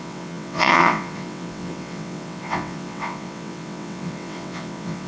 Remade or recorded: remade